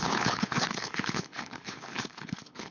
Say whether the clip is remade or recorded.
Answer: remade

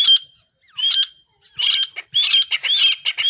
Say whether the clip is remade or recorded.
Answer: recorded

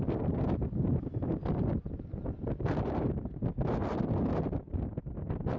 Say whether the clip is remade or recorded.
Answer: recorded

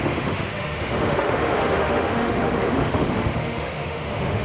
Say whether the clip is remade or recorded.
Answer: remade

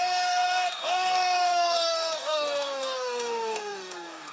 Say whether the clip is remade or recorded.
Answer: remade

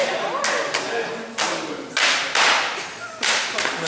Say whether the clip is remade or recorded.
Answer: recorded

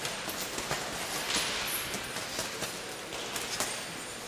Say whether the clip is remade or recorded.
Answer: recorded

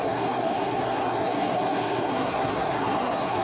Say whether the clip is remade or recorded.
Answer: remade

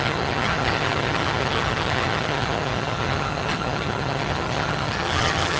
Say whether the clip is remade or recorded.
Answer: remade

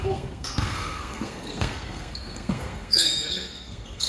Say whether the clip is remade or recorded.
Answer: remade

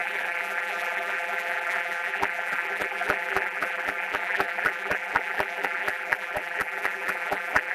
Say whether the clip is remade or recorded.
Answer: remade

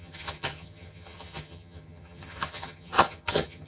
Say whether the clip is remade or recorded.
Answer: remade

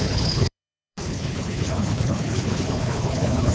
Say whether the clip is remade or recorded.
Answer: remade